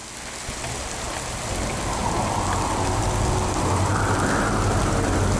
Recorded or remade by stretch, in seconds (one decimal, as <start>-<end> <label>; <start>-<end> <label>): 0.0-1.0 recorded; 1.0-2.0 remade; 2.0-3.0 recorded; 3.0-3.9 remade; 3.9-4.7 recorded; 4.7-5.4 remade